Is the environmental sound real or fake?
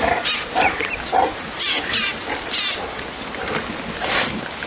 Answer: real